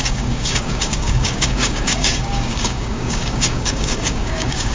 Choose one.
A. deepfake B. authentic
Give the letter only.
A